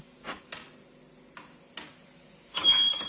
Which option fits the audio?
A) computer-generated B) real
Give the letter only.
B